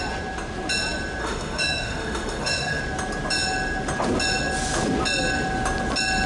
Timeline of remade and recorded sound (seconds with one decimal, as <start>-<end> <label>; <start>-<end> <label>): 0.0-1.2 recorded; 1.2-2.8 remade; 2.8-6.3 recorded